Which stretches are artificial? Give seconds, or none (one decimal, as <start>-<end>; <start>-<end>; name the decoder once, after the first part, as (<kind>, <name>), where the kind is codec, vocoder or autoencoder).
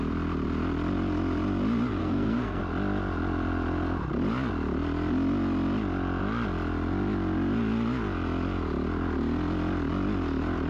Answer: 2.0-2.6 (codec, SNAC)